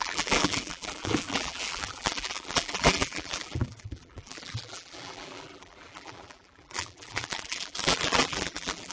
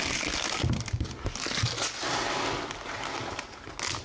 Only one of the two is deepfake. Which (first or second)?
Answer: first